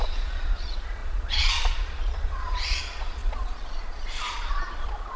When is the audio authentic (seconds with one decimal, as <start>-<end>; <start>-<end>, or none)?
none